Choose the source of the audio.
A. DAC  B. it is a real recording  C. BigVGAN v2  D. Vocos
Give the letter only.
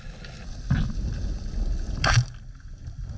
B